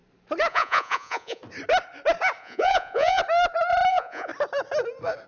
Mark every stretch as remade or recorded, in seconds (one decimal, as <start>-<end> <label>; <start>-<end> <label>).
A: 0.0-0.5 recorded; 0.5-1.4 remade; 1.4-2.4 recorded; 2.4-3.2 remade; 3.2-3.9 recorded; 3.9-4.3 remade; 4.3-5.3 recorded